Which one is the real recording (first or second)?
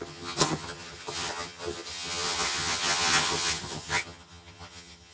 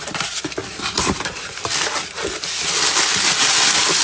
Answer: second